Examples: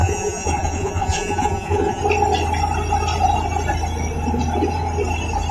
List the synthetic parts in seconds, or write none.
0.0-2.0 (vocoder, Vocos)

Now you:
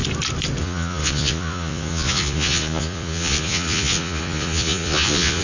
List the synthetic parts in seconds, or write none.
0.6-5.4 (vocoder, Vocos)

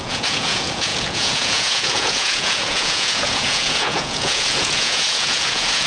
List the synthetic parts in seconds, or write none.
0.0-5.9 (vocoder, Vocos)

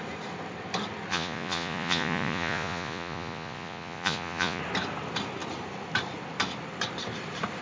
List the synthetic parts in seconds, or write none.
1.1-4.6 (vocoder, Vocos)

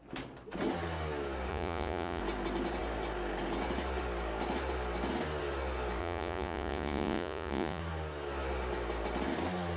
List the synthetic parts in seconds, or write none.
1.5-2.2 (vocoder, Vocos); 6.0-7.8

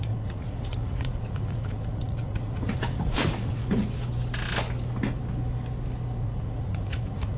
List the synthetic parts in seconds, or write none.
0.0-3.6 (vocoder, Vocos); 6.2-7.4

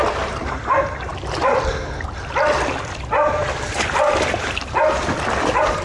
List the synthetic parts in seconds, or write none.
none

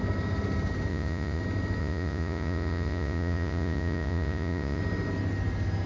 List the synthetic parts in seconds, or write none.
0.9-1.4 (vocoder, Vocos); 1.8-4.8